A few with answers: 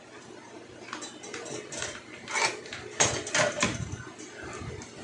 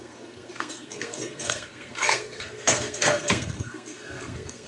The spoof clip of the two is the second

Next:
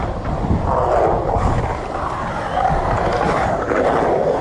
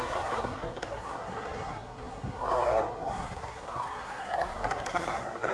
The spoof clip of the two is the second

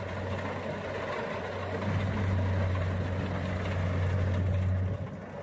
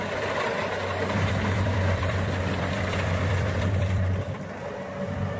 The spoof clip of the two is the second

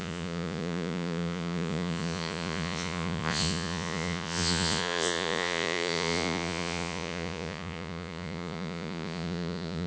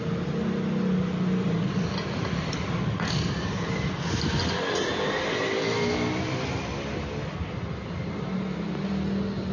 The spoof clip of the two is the first